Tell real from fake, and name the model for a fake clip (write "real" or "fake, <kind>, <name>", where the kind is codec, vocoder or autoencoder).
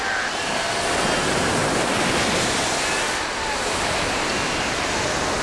real